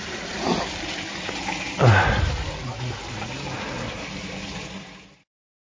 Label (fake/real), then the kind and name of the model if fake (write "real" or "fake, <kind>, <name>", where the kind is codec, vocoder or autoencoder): real